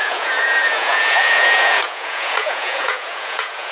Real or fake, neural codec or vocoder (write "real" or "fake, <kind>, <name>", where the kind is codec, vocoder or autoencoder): fake, vocoder, Vocos